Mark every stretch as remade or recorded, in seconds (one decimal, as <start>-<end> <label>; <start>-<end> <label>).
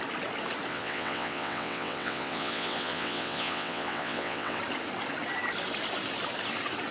0.0-0.7 recorded; 0.7-4.6 remade; 4.6-6.9 recorded